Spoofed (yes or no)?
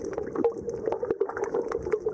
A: no